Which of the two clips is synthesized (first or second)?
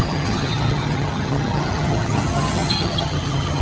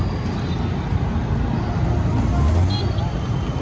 first